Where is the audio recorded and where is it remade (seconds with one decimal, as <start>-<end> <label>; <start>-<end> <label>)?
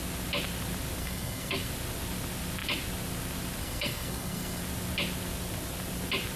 0.0-1.0 recorded; 1.0-1.7 remade; 1.7-3.6 recorded; 3.6-4.6 remade; 4.6-6.4 recorded